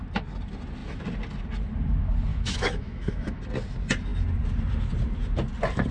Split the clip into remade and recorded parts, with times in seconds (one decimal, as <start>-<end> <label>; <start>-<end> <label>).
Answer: 0.0-2.3 recorded; 2.3-3.4 remade; 3.4-5.9 recorded